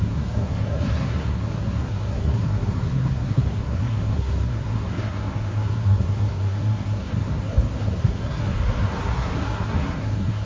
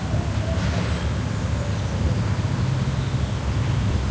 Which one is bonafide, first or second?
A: second